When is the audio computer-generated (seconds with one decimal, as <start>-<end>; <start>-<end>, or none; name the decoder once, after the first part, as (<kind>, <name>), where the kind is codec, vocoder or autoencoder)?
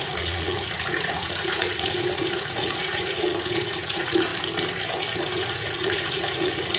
0.0-4.3 (vocoder, Vocos); 5.2-6.8